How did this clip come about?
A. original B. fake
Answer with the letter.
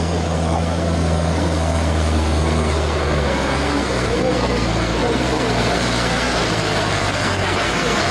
B